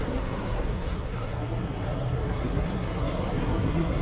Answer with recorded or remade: remade